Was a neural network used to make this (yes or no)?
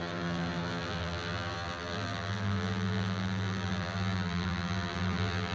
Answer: yes